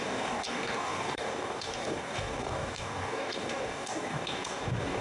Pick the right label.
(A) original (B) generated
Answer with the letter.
B